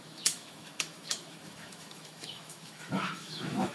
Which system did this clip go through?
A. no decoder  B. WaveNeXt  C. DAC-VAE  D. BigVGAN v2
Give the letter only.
C